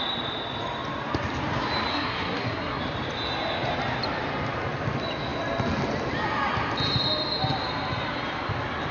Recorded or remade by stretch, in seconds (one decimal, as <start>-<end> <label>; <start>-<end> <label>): 0.0-1.9 recorded; 1.9-2.8 remade; 2.8-8.9 recorded